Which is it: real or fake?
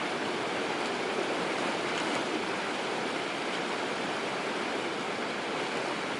fake